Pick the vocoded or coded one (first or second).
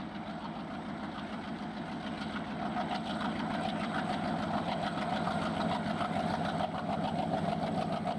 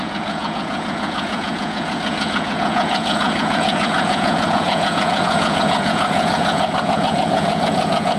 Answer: second